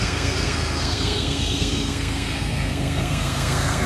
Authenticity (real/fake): fake